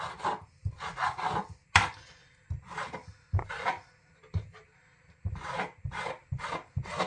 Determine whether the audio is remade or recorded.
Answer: recorded